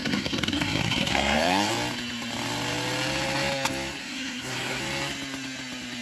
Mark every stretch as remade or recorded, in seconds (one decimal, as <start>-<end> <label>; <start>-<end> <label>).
0.0-1.7 remade; 1.7-4.0 recorded; 4.0-4.8 remade; 4.8-6.0 recorded